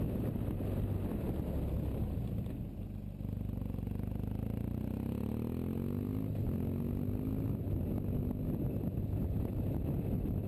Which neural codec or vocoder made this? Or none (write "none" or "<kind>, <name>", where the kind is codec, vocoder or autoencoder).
none